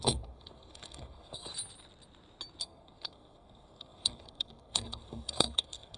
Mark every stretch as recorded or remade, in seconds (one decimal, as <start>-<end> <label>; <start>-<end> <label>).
0.0-1.5 remade; 1.5-2.6 recorded; 2.6-6.0 remade